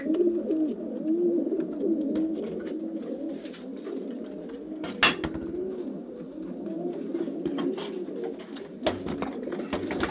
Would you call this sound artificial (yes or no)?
no